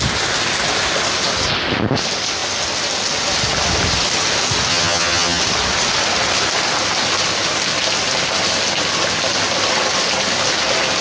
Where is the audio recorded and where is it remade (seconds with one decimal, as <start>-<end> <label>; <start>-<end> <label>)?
0.0-4.7 recorded; 4.7-5.4 remade; 5.4-11.0 recorded